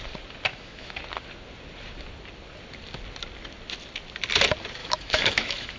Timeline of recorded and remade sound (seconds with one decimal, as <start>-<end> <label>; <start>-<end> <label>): 0.0-0.5 recorded; 0.5-1.0 remade; 1.0-4.8 recorded; 4.8-5.8 remade